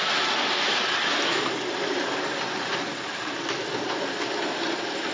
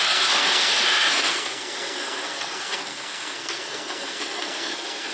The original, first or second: first